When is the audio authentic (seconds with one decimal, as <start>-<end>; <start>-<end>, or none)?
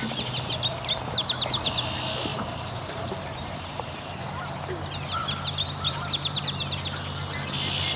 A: 0.0-2.3; 4.0-8.0